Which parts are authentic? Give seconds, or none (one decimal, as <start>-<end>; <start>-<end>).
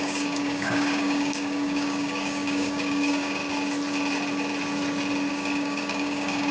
3.4-5.3